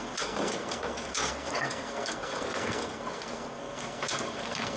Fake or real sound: fake